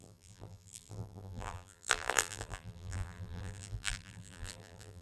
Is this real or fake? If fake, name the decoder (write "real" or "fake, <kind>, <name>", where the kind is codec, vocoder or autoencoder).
fake, vocoder, BigVGAN v2